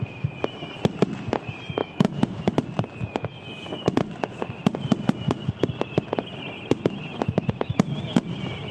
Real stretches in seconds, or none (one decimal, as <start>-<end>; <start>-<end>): 0.0-1.8; 2.4-8.7